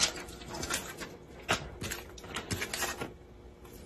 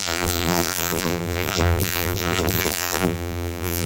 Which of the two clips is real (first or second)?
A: first